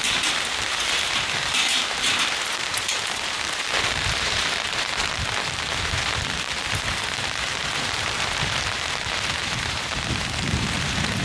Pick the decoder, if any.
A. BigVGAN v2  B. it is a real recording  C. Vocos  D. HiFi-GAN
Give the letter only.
A